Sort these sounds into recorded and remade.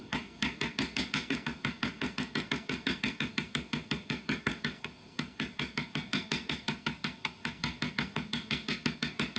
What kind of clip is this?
remade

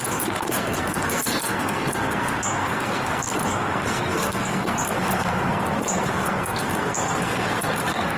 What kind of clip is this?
remade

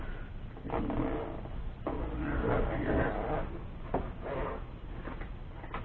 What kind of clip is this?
recorded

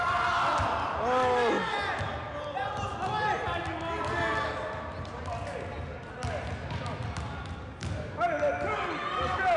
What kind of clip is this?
recorded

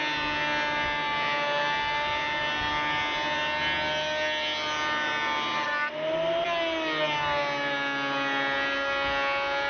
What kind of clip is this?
recorded